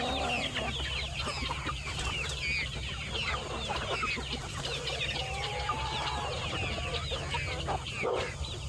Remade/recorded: recorded